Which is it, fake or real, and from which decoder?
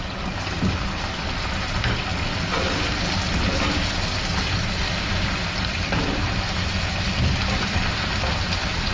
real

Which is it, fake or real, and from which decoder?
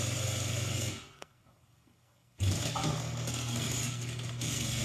fake, codec, SNAC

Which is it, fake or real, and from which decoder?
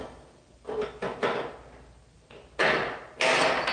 real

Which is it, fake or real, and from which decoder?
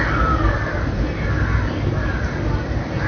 real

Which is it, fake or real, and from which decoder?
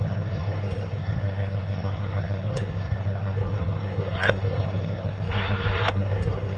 fake, codec, SNAC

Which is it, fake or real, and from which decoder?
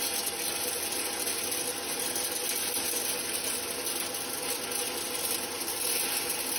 real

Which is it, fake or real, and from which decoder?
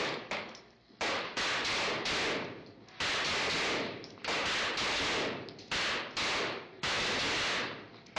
real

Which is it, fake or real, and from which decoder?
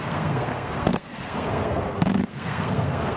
fake, codec, SNAC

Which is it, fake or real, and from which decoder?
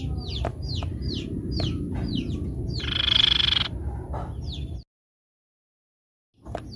real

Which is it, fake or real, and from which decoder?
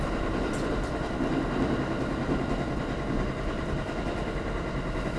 real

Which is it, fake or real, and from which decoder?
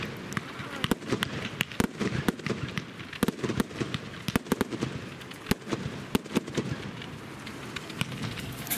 real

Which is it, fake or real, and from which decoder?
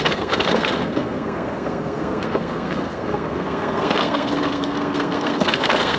fake, codec, SNAC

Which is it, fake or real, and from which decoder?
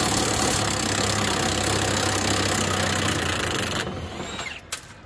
real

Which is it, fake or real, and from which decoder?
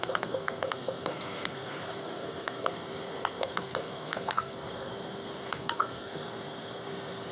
fake, codec, SNAC